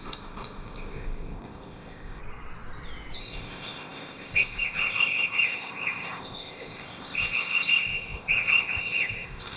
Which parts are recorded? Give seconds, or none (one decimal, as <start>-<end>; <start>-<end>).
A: 2.2-3.2